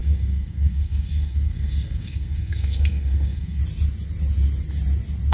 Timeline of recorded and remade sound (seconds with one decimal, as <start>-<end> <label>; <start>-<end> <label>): 0.0-3.6 remade; 3.6-5.3 recorded